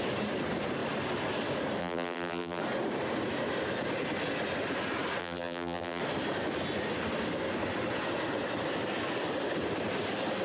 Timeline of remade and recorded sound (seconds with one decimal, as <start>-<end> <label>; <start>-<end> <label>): 0.0-1.8 recorded; 1.8-2.6 remade; 2.6-5.2 recorded; 5.2-6.0 remade; 6.0-10.4 recorded